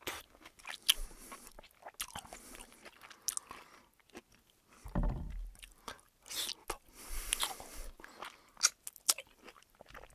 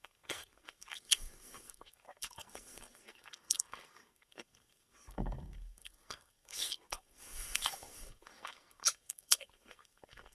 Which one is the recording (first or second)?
first